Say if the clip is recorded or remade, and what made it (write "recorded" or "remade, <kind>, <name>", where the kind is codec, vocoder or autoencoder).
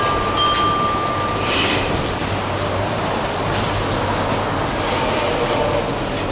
recorded